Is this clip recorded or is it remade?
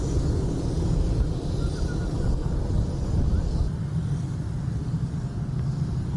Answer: recorded